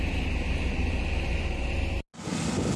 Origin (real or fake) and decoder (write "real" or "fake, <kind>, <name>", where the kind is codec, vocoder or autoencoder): real